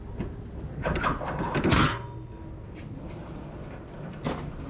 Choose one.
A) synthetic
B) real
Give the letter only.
B